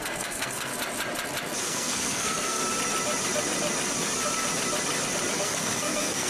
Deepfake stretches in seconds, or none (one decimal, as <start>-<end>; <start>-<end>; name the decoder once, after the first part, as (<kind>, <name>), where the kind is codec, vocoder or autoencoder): 0.0-0.7 (codec, SNAC); 1.6-2.6; 5.3-6.3